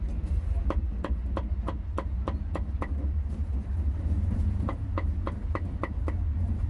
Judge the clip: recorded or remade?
recorded